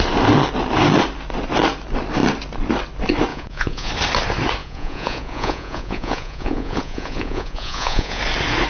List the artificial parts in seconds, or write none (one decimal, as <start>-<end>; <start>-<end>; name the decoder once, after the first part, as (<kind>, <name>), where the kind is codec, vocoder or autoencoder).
3.3-3.9 (vocoder, Vocos); 4.6-8.2

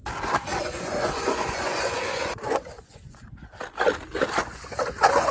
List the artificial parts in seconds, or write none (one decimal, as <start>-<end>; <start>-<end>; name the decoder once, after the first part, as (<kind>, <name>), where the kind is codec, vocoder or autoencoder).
0.5-3.3 (vocoder, Vocos); 4.4-5.3

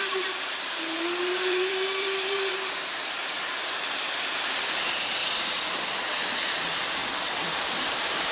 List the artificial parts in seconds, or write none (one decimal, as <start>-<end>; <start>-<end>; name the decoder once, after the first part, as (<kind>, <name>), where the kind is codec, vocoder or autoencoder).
0.0-5.2 (vocoder, BigVGAN v2); 6.5-7.0; 7.5-8.3

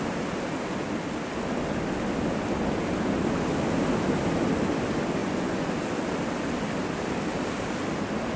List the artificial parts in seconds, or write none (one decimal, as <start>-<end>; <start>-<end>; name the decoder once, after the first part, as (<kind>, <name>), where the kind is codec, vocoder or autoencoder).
5.2-5.7 (vocoder, Vocos)